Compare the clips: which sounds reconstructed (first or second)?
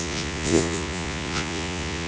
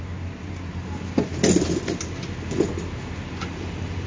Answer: first